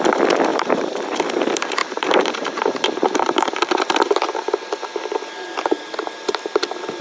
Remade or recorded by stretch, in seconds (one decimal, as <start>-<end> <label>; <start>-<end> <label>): 0.0-0.5 recorded; 0.5-1.2 remade; 1.2-1.8 recorded; 1.8-3.8 remade; 3.8-7.0 recorded